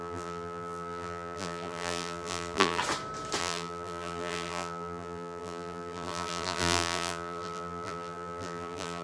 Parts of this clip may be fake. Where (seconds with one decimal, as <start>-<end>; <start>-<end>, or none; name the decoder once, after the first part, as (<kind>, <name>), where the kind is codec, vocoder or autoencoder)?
0.0-2.8 (vocoder, BigVGAN v2); 3.4-9.0